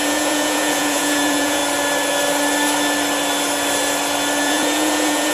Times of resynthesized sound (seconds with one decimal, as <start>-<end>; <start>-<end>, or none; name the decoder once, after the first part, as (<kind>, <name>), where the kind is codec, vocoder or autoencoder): 0.0-1.6 (vocoder, Vocos); 4.4-5.3